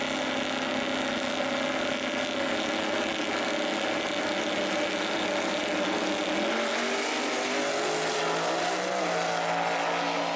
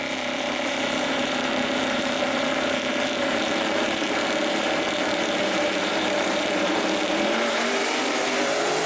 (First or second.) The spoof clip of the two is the second